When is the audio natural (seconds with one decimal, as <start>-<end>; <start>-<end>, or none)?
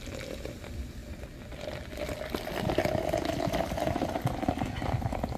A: 0.0-5.4